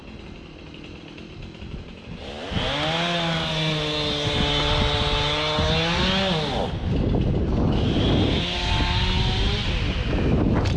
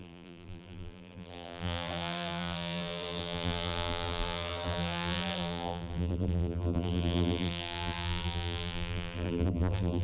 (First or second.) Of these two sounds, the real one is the first